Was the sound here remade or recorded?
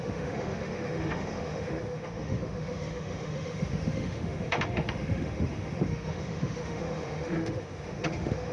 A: remade